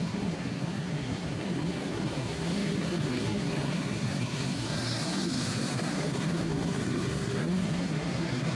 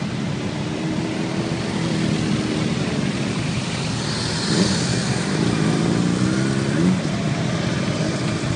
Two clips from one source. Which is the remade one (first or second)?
first